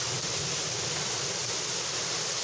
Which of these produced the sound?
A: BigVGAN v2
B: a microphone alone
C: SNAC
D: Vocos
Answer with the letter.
A